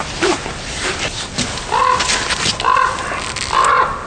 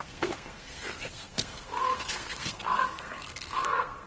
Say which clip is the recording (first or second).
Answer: first